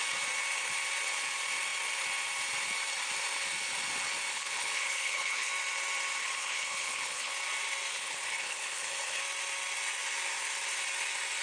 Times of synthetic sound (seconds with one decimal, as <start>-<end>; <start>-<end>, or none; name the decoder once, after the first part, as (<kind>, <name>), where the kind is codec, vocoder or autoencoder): 4.3-5.5 (codec, HILCodec); 6.2-7.3; 7.9-9.2